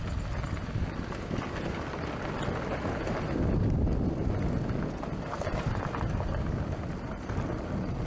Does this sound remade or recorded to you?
recorded